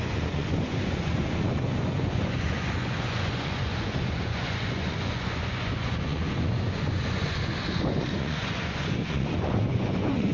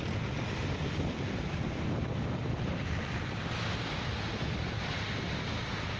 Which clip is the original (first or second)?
second